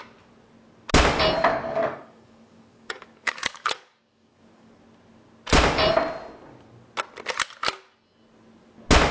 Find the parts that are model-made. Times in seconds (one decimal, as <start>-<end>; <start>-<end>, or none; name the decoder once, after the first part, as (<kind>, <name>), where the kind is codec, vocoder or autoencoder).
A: 1.5-4.7 (codec, DAC)